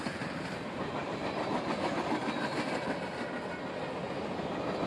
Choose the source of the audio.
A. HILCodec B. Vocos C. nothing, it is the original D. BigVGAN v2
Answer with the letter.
C